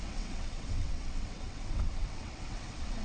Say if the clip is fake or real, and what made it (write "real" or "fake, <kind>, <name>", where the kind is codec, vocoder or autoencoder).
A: fake, vocoder, WaveNeXt